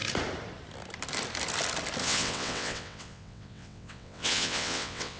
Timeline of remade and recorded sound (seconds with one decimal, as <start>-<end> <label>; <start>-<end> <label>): 0.0-2.0 recorded; 2.0-5.2 remade